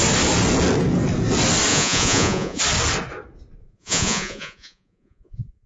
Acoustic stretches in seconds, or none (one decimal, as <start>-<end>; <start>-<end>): 0.0-1.7; 2.6-3.6